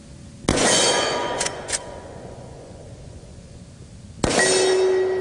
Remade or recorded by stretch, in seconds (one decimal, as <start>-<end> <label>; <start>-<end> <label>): 0.0-0.5 recorded; 0.5-3.6 remade; 3.6-5.2 recorded